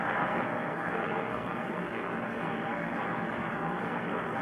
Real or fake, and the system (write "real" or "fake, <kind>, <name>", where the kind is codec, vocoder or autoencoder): fake, codec, SNAC